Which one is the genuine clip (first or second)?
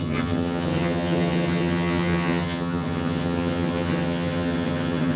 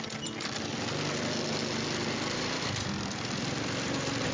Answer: second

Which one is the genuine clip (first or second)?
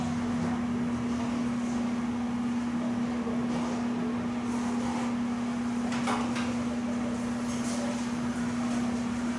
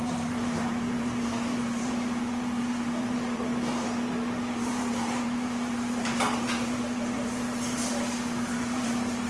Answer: first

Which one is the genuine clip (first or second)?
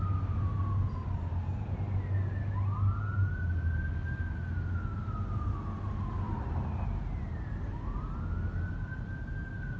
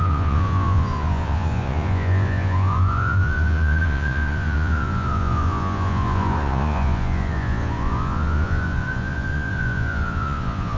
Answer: first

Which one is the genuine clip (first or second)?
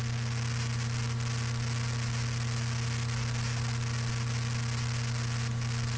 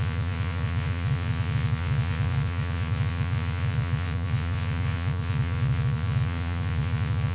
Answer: first